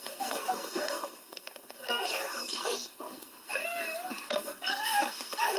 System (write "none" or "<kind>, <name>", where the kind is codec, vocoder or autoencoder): codec, SNAC